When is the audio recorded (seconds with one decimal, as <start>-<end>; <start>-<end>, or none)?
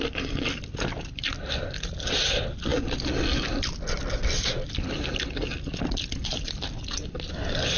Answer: 0.0-7.8